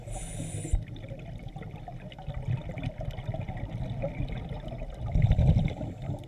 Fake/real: real